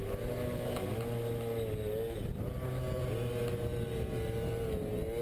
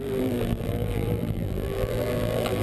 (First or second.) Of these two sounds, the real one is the first